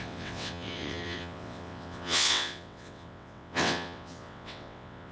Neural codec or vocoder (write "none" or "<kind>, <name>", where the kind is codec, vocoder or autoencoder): vocoder, WaveNeXt